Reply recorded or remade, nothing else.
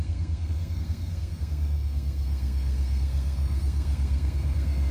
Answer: remade